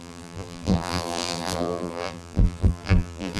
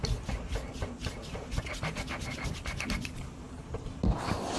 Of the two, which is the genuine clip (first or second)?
second